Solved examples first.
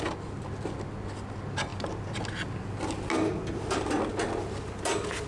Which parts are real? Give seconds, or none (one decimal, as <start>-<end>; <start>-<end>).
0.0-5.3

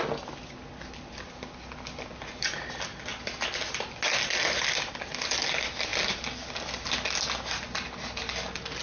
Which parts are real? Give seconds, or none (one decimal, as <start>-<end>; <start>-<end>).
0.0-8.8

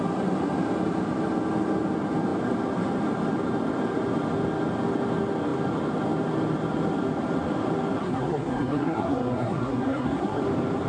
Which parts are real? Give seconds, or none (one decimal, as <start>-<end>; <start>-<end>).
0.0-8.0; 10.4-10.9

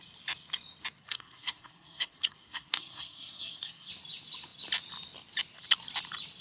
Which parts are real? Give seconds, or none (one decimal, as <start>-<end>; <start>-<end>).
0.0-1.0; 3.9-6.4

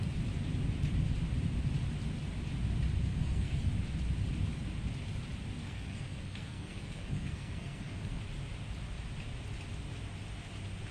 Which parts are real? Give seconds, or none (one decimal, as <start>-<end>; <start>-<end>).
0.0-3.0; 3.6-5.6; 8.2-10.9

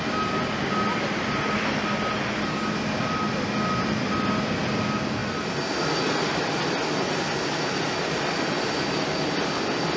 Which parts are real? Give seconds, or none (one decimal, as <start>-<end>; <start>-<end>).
0.0-10.0

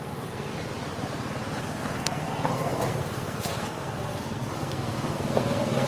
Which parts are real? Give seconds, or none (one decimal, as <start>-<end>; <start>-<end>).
0.5-1.6

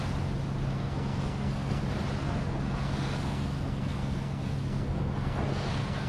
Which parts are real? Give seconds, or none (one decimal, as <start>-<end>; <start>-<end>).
0.0-0.7; 1.8-2.2